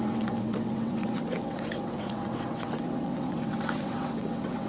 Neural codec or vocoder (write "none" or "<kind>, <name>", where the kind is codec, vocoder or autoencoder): vocoder, WaveNeXt